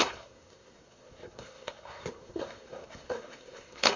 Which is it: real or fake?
fake